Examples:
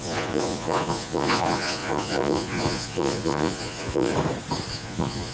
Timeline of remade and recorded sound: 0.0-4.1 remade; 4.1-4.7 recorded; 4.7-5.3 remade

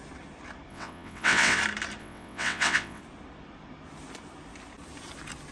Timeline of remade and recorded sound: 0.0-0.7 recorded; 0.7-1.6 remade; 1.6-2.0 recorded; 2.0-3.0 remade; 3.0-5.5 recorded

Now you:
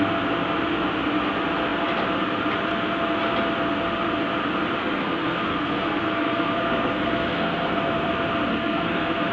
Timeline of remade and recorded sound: 0.0-4.8 recorded; 4.8-8.1 remade; 8.1-8.5 recorded; 8.5-9.3 remade

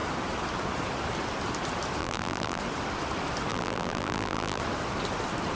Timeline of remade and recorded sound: 0.0-2.0 recorded; 2.0-2.6 remade; 2.6-3.5 recorded; 3.5-4.6 remade; 4.6-5.5 recorded

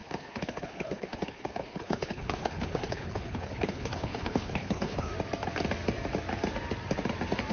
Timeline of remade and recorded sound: 0.0-5.1 remade; 5.1-7.5 recorded